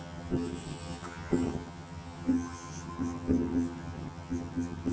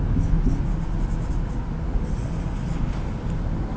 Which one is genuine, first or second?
second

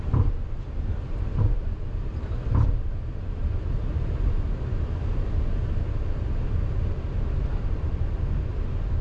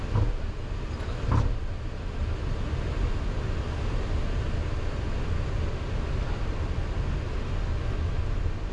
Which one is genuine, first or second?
second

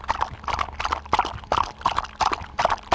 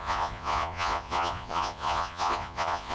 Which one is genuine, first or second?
first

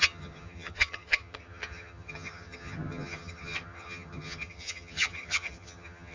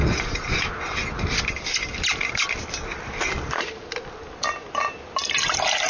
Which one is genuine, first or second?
second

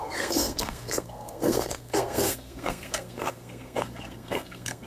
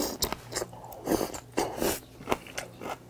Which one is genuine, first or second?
second